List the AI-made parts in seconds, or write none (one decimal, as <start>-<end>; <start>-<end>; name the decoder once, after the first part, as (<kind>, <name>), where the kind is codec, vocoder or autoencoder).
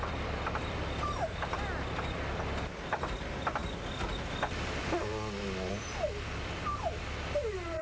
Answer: 0.0-3.6 (vocoder, BigVGAN v2); 4.2-5.1; 5.7-7.8